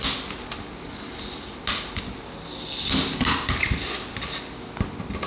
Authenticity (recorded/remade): recorded